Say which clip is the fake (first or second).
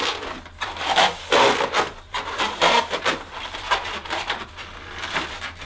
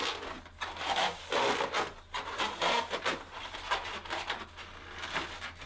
first